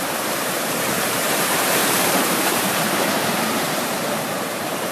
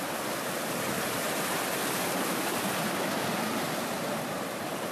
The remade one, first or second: first